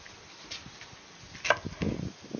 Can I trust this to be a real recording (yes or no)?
yes